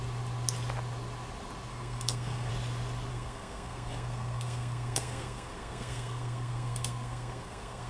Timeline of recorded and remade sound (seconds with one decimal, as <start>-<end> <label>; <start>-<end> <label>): 0.0-1.7 recorded; 1.7-2.5 remade; 2.5-3.1 recorded; 3.1-7.9 remade